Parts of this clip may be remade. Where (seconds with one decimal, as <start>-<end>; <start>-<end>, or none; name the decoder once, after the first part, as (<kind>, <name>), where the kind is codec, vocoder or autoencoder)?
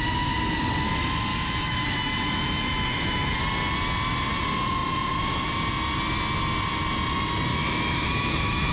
1.3-3.4 (autoencoder, DAC-VAE); 7.5-8.7